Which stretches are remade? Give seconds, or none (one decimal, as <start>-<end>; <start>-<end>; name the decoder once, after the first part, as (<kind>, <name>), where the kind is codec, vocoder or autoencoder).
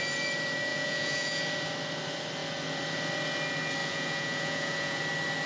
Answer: 0.7-1.4 (vocoder, Vocos); 3.8-5.0